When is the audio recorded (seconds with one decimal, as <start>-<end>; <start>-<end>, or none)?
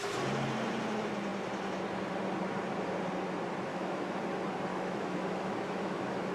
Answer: 0.0-3.7; 4.2-4.7